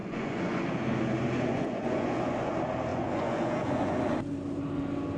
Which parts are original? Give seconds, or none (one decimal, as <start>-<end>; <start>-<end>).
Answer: 0.6-1.5; 2.5-2.9; 4.0-5.2